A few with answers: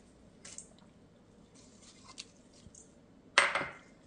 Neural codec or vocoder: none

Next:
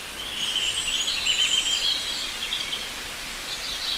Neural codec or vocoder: none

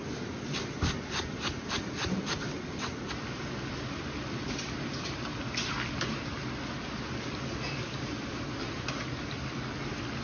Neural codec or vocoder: none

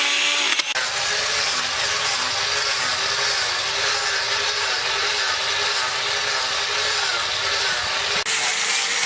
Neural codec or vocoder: none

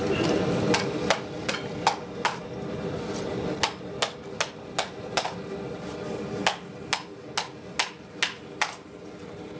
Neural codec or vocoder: none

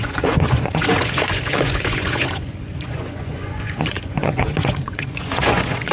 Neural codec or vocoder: vocoder, Vocos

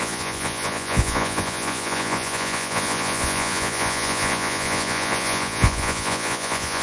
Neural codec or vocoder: vocoder, Vocos